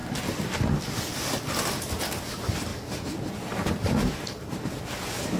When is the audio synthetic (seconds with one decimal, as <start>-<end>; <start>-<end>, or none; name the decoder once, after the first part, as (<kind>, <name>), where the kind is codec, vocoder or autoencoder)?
none